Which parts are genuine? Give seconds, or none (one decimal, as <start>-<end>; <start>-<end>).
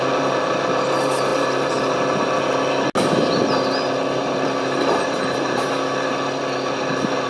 0.0-4.2; 5.7-7.3